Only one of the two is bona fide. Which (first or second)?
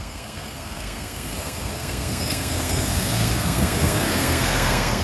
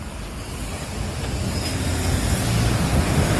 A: second